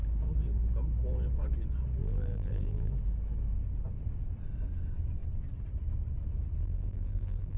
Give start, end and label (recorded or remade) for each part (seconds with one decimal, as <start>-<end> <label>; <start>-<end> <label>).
0.0-2.0 recorded; 2.0-2.9 remade; 2.9-6.6 recorded; 6.6-7.6 remade